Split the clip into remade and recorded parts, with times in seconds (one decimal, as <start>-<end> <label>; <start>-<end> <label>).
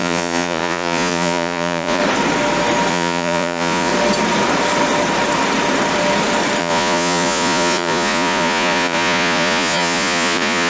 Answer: 0.0-2.0 remade; 2.0-2.9 recorded; 2.9-3.9 remade; 3.9-6.6 recorded; 6.6-10.7 remade